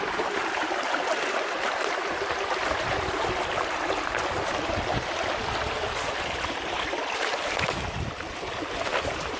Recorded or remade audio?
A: recorded